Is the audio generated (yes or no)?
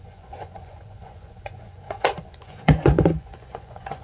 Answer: yes